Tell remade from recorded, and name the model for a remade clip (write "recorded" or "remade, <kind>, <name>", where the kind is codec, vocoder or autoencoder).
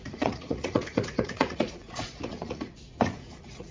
remade, vocoder, Vocos